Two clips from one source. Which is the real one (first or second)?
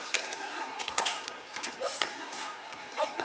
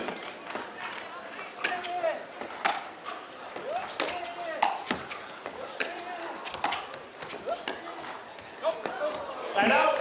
second